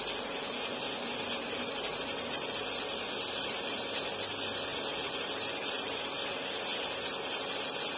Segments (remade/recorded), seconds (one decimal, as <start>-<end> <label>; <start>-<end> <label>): 0.0-8.0 recorded